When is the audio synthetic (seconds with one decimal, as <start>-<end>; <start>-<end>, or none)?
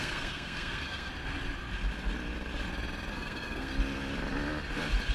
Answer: 0.0-1.1; 3.1-3.7